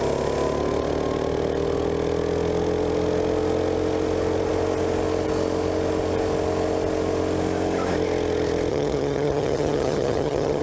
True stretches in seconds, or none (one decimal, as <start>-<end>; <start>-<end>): 0.0-8.7